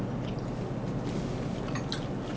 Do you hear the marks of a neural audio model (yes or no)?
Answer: no